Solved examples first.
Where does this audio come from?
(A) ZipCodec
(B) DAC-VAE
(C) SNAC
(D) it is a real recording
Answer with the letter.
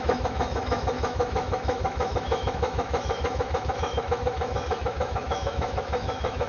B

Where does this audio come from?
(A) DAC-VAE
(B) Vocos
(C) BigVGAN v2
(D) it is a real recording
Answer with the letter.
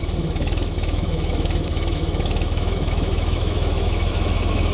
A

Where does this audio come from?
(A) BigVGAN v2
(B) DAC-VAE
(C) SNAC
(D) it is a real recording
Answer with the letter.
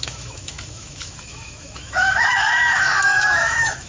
B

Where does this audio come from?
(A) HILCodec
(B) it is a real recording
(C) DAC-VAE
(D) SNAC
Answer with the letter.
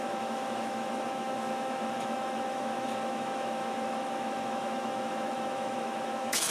C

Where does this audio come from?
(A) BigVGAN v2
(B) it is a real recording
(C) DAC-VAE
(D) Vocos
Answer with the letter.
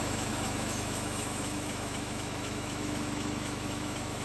C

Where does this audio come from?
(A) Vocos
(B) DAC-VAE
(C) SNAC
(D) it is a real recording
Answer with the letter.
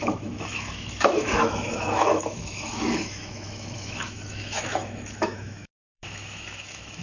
B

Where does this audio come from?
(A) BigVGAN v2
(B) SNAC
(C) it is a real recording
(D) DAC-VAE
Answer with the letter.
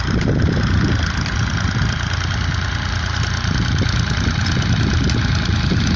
C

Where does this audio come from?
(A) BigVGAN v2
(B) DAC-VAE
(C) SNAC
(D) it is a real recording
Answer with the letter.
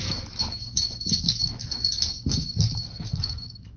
B